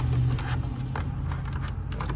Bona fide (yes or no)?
yes